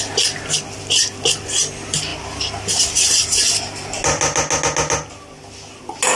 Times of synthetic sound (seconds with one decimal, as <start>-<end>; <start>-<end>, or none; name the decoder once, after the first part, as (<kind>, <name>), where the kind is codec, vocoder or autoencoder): none